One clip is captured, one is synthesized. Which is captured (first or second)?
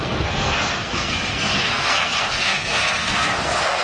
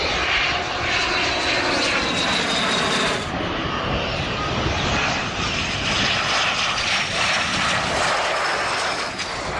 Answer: second